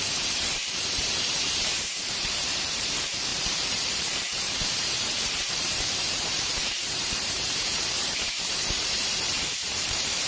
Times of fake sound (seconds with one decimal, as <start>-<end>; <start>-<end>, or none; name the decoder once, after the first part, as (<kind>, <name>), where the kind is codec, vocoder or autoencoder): 0.0-10.3 (vocoder, BigVGAN v2)